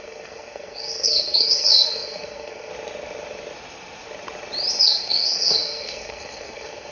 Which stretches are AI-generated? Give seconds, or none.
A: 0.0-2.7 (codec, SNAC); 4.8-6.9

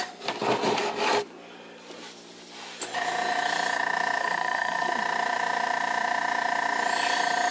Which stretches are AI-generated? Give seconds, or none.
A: 4.2-4.9 (codec, SNAC)

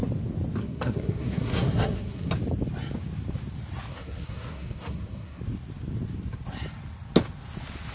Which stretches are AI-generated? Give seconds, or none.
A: 0.6-2.3 (codec, SNAC); 3.9-5.4

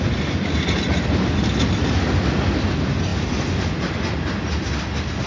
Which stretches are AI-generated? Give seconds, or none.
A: none

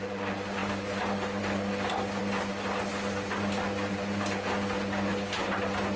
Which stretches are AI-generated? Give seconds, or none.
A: none

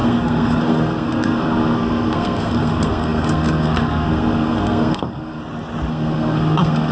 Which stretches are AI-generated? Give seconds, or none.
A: 0.0-5.4 (codec, SNAC); 5.9-6.9